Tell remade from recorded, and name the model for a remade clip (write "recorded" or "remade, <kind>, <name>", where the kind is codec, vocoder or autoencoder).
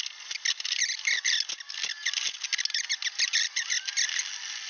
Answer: recorded